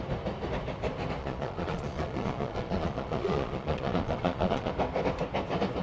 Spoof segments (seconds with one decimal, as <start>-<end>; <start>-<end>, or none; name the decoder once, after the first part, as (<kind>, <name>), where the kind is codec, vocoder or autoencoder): 1.2-4.7 (vocoder, Vocos)